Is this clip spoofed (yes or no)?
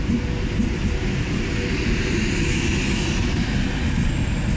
no